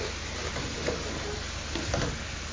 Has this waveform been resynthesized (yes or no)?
no